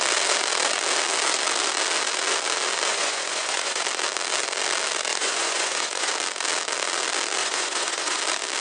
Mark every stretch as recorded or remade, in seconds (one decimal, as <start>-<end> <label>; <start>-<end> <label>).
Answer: 0.0-2.9 recorded; 2.9-3.8 remade; 3.8-5.1 recorded; 5.1-6.1 remade; 6.1-7.4 recorded; 7.4-8.2 remade; 8.2-8.6 recorded